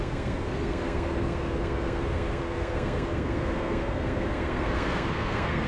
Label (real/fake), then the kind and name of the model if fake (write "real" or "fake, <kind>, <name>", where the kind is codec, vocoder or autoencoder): fake, codec, SNAC